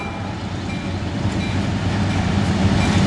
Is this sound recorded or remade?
recorded